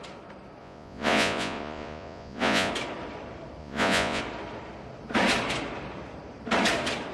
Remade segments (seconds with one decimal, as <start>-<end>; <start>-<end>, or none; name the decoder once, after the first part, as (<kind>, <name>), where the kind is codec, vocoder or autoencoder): 0.6-2.7 (vocoder, Vocos); 3.6-4.2